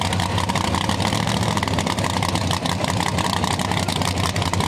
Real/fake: real